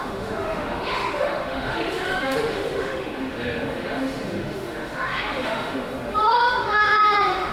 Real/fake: fake